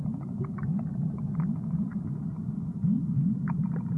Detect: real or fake real